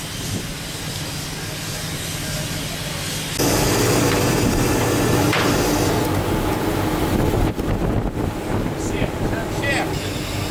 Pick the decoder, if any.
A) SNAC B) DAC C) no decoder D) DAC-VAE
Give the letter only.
C